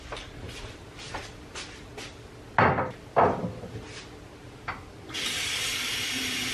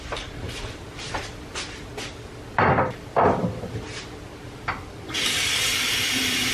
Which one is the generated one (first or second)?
second